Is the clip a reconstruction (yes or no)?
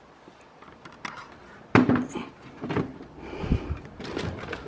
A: no